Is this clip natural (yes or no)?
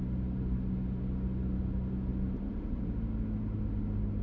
yes